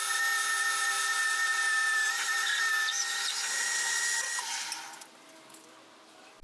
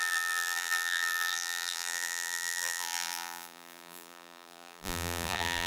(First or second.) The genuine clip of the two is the first